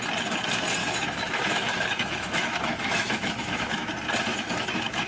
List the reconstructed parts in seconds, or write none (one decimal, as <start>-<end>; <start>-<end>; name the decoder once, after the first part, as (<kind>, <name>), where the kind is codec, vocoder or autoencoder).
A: 0.8-3.9 (autoencoder, DAC-VAE); 4.3-5.1